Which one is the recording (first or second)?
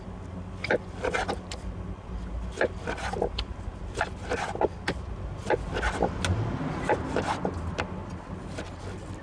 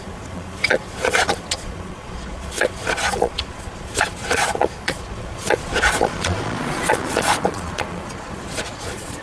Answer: first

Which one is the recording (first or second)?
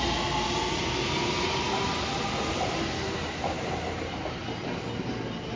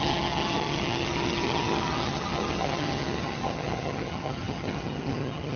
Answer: first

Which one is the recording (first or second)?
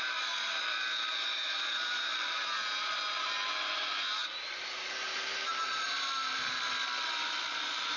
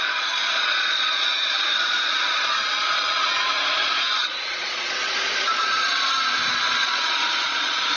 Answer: first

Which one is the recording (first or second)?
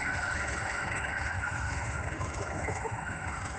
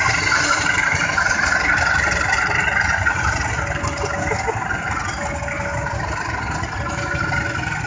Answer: second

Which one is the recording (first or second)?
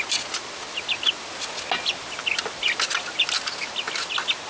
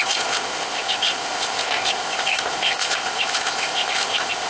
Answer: first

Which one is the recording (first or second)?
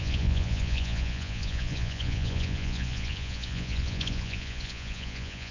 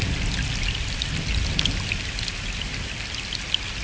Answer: second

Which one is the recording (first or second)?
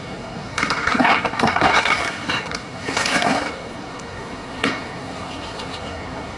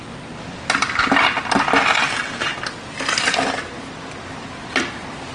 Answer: second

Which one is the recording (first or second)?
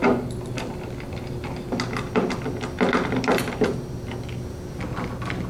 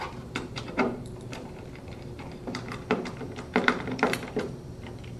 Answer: first